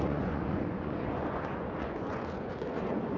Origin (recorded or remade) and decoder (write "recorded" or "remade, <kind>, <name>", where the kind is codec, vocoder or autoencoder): remade, vocoder, Vocos